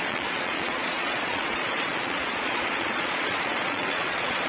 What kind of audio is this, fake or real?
fake